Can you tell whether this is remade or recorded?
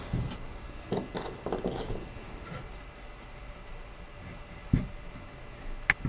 recorded